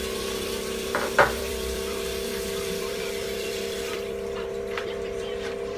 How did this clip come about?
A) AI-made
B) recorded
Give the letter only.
A